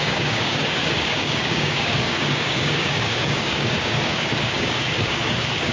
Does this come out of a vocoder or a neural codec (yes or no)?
yes